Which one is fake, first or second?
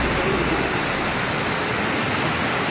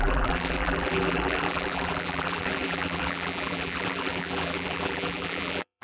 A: second